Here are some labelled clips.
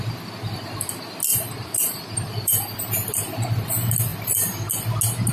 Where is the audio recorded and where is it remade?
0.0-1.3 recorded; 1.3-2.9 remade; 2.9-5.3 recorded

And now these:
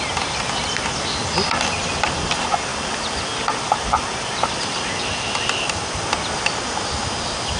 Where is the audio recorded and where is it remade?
0.0-7.6 recorded

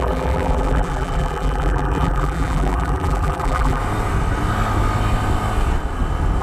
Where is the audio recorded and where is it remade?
0.0-3.8 remade; 3.8-6.4 recorded

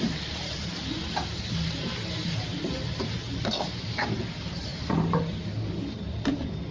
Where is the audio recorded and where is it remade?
0.0-6.7 remade

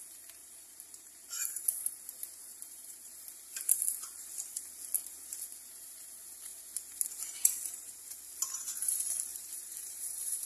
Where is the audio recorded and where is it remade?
0.0-0.4 recorded; 0.4-1.8 remade; 1.8-2.5 recorded; 2.5-3.1 remade; 3.1-9.3 recorded; 9.3-10.5 remade

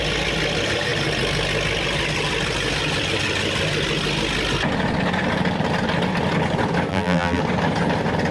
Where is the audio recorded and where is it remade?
0.0-6.9 recorded; 6.9-7.4 remade; 7.4-8.3 recorded

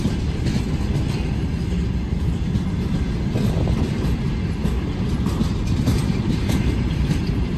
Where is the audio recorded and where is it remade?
0.0-5.9 recorded; 5.9-7.6 remade

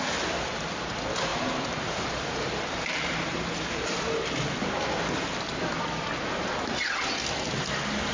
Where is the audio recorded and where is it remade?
0.0-1.3 recorded; 1.3-4.0 remade; 4.0-8.1 recorded